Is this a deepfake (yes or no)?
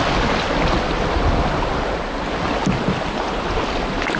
no